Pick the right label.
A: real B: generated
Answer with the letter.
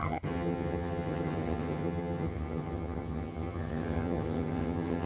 B